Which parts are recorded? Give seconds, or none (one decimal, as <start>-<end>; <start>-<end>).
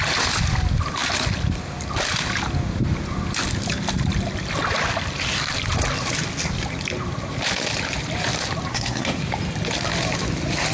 0.0-8.7; 9.2-10.7